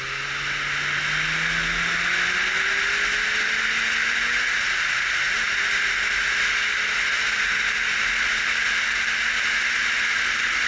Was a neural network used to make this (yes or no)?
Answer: no